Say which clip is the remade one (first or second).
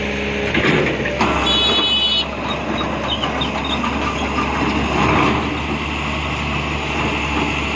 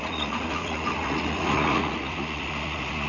second